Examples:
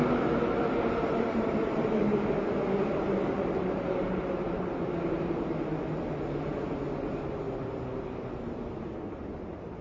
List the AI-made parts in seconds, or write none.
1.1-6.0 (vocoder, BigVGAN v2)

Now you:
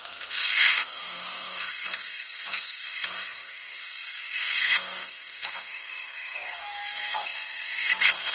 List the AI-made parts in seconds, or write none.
0.0-8.3 (codec, SNAC)